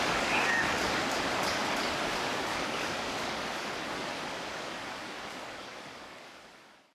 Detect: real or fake fake